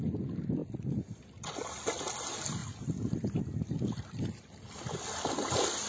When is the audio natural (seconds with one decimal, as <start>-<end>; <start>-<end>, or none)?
0.0-0.6; 1.2-2.6; 3.4-5.9